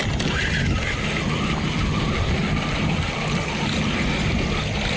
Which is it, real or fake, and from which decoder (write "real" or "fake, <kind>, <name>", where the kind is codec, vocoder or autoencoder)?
real